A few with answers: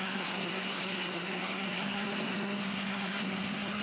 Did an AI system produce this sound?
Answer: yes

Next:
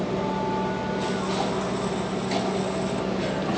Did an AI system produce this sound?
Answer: no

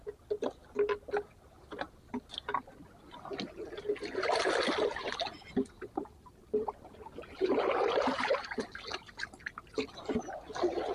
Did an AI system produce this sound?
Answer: no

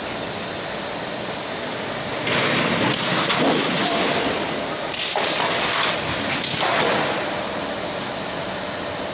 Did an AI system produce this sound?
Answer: no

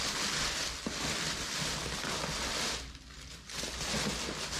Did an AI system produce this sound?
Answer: no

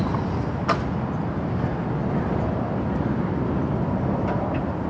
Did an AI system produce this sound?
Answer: no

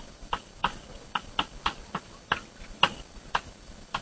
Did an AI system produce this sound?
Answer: no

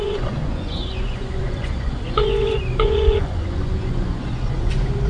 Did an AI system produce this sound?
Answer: yes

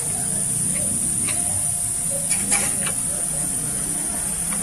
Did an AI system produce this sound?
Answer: no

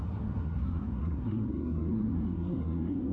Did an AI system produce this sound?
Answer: yes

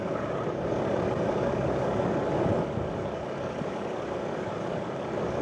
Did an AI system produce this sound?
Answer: yes